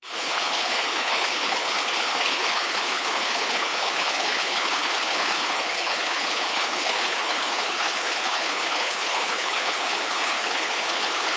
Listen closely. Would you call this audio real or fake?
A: fake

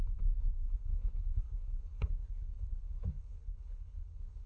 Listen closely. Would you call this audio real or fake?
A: fake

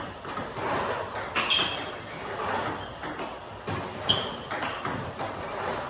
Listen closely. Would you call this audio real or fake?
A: real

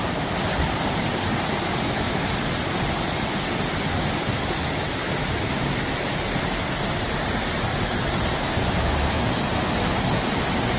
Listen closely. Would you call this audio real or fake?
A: real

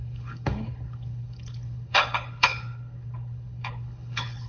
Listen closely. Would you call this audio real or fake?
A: fake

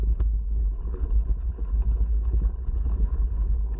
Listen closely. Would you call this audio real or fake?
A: fake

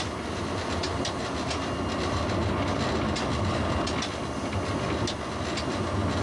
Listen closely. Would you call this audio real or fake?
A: real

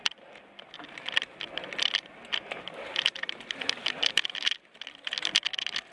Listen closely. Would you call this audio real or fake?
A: real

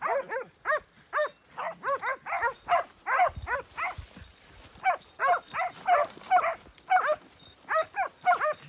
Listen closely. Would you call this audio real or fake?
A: real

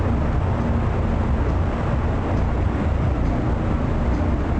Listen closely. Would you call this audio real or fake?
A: real